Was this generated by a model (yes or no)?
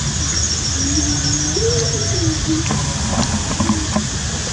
yes